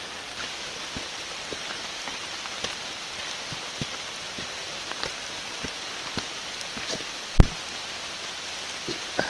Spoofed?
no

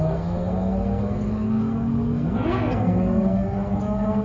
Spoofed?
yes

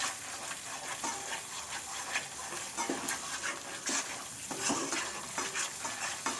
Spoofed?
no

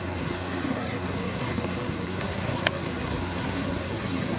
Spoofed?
yes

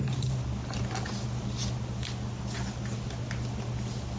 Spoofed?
no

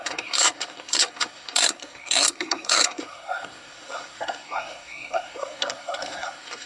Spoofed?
yes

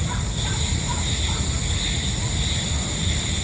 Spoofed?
no